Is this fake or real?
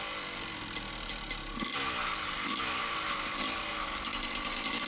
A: real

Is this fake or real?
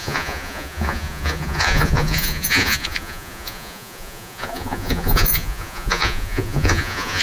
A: fake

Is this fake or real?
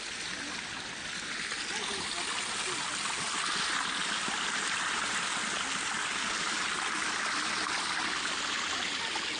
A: real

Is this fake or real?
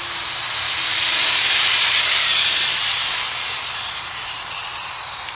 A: fake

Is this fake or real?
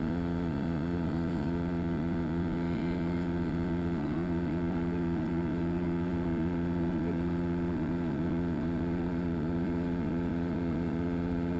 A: fake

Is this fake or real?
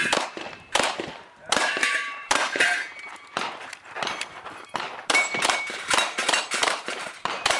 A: fake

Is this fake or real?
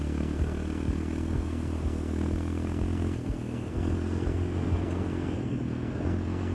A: fake